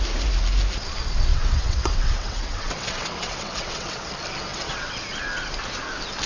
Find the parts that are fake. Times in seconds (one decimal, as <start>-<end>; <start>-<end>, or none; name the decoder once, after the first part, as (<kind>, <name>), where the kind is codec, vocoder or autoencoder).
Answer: 1.3-4.1 (vocoder, WaveNeXt); 4.5-5.0